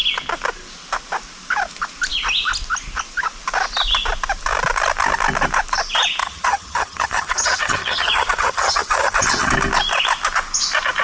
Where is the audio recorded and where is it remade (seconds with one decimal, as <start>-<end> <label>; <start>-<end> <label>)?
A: 0.0-6.2 recorded; 6.2-9.5 remade; 9.5-11.0 recorded